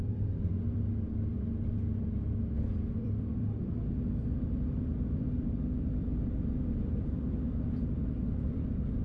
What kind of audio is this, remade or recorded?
remade